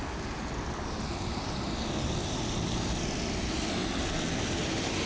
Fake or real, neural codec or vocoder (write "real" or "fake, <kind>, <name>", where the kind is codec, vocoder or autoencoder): real